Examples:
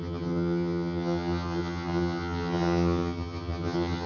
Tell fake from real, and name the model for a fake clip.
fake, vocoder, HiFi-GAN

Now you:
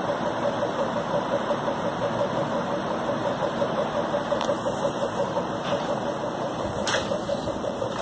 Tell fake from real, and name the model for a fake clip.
fake, vocoder, BigVGAN v2